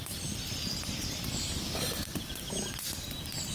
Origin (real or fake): fake